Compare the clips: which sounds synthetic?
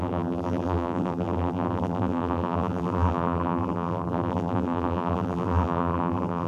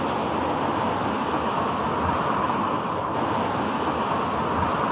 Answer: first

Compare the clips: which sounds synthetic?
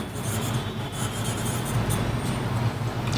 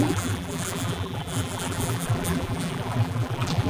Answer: second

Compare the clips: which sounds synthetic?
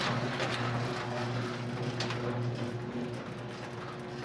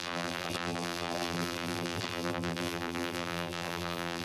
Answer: second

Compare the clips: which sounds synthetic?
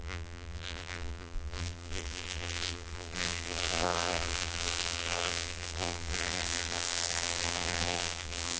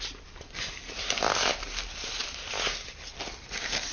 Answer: first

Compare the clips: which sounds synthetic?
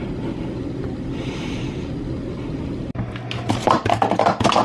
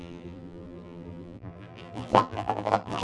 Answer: second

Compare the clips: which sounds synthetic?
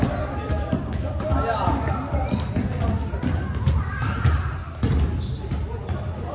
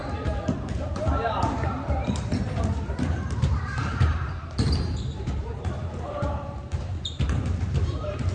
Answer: second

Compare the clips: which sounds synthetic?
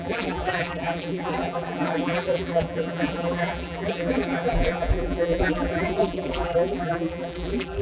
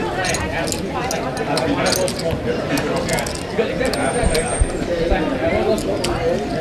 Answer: first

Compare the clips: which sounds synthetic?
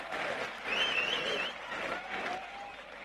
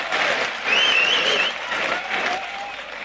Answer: second